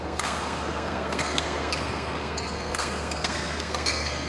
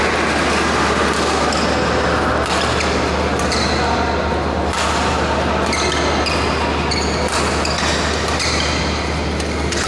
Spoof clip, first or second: first